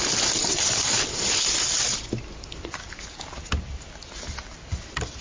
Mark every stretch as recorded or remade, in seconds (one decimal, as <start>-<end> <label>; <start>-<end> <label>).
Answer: 0.0-5.2 recorded

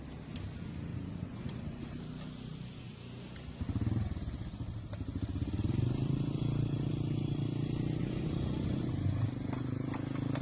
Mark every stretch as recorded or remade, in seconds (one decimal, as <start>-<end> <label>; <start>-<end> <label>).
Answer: 0.0-0.9 recorded; 0.9-1.9 remade; 1.9-8.0 recorded; 8.0-8.9 remade; 8.9-10.4 recorded

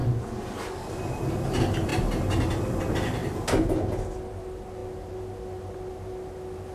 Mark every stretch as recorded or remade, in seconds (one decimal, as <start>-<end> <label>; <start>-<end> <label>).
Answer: 0.0-6.7 recorded